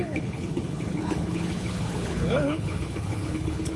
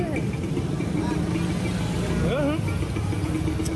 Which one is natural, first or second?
second